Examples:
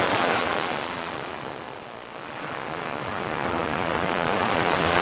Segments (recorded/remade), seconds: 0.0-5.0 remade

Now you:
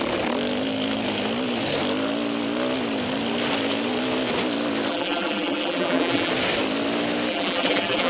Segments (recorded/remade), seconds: 0.0-4.9 recorded; 4.9-6.3 remade; 6.3-7.3 recorded; 7.3-8.1 remade

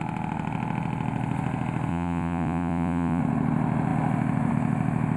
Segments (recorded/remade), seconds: 0.0-1.9 recorded; 1.9-3.2 remade; 3.2-5.2 recorded

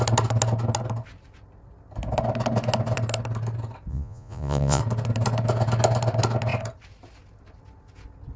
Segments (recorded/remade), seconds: 0.0-3.9 recorded; 3.9-4.8 remade; 4.8-8.4 recorded

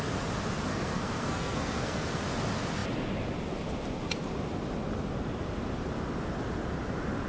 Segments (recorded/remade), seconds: 0.0-0.7 recorded; 0.7-2.2 remade; 2.2-7.3 recorded

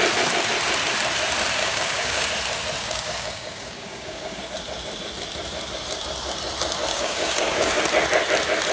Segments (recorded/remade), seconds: 0.0-1.6 recorded; 1.6-2.3 remade; 2.3-2.8 recorded; 2.8-4.4 remade; 4.4-6.9 recorded; 6.9-7.8 remade; 7.8-8.7 recorded

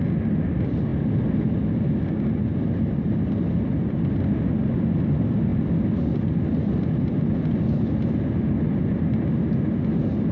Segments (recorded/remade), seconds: 0.0-10.3 recorded

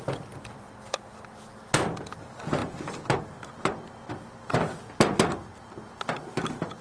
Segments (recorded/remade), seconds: 0.0-2.6 recorded; 2.6-4.1 remade; 4.1-6.8 recorded